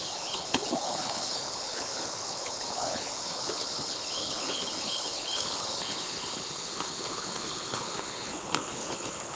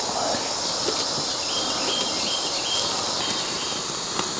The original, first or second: second